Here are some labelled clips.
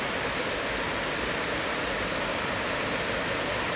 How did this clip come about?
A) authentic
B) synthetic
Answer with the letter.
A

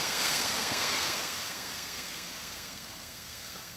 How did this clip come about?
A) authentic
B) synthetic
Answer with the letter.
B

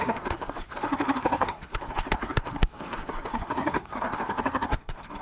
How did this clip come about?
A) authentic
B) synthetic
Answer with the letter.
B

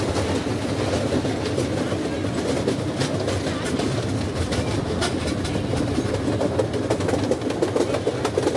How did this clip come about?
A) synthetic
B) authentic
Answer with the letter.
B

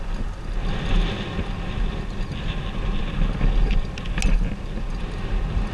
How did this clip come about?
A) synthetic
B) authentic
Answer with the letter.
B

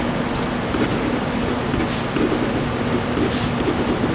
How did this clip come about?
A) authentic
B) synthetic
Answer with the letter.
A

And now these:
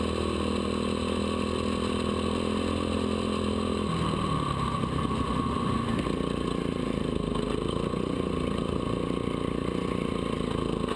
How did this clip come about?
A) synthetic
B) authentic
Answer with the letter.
B